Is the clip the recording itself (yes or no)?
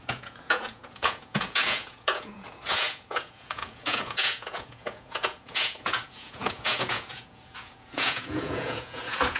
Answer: no